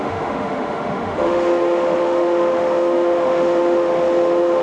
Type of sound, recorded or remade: remade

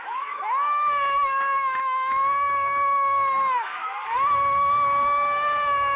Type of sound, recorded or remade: remade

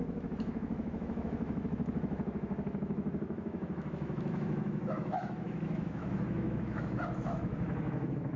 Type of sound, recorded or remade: remade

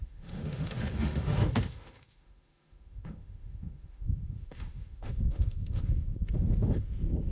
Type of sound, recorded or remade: remade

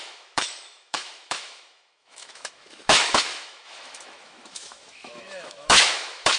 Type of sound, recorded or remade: remade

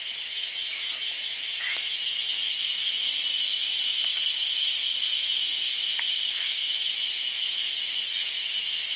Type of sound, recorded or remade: remade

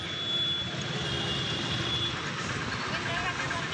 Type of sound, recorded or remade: recorded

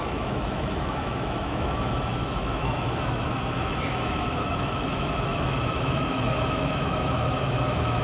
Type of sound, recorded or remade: remade